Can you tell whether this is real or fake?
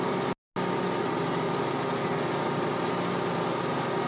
real